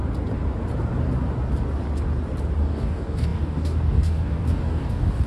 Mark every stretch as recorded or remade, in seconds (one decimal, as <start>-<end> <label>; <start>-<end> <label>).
0.0-2.6 recorded; 2.6-5.3 remade